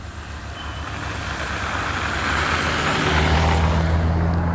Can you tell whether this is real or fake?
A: real